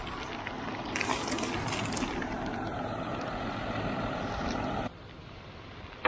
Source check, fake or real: real